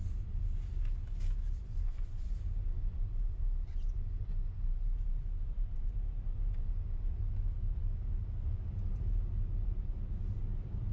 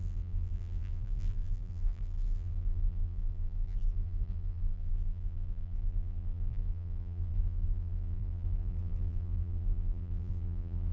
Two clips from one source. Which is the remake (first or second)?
second